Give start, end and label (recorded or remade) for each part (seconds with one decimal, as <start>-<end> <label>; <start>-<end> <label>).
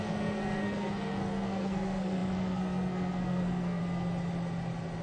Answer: 0.0-3.8 remade; 3.8-5.0 recorded